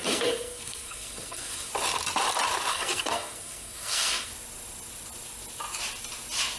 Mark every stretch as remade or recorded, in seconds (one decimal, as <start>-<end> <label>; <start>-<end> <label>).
0.0-1.7 remade; 1.7-2.7 recorded; 2.7-4.3 remade; 4.3-6.6 recorded